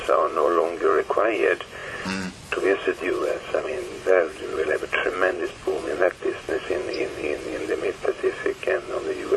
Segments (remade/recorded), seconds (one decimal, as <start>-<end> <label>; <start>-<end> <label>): 0.0-9.4 remade